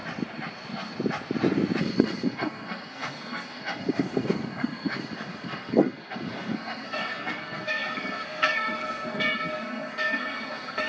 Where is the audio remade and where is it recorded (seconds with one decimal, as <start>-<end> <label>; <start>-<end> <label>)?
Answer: 0.0-1.8 recorded; 1.8-10.9 remade